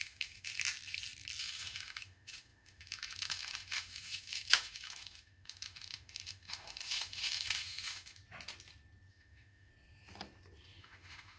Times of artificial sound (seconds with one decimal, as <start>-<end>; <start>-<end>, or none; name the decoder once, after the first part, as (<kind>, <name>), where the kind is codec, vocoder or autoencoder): 0.0-0.5 (autoencoder, DAC-VAE); 1.4-8.2; 9.1-9.7; 10.8-11.4